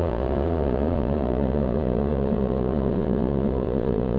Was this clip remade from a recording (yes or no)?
yes